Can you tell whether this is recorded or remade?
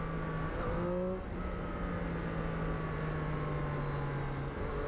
recorded